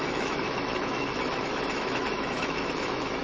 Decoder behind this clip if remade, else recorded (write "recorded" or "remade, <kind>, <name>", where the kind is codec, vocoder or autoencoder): remade, autoencoder, DAC-VAE